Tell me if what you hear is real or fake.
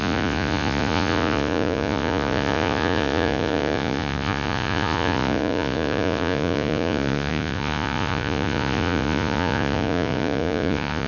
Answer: fake